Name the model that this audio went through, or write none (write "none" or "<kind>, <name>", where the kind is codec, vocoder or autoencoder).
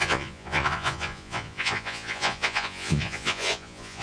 vocoder, Vocos